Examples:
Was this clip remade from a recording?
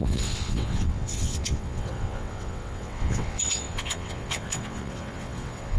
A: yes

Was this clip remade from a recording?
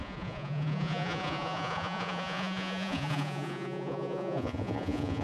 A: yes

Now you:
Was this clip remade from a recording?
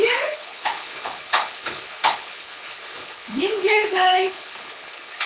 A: yes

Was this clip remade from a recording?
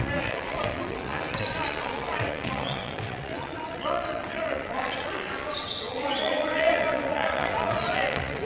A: yes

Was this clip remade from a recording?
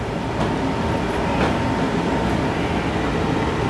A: no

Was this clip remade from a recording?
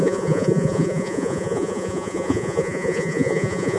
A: yes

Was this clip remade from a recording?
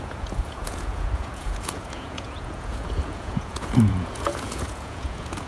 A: yes